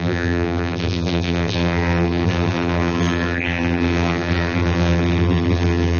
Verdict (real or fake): fake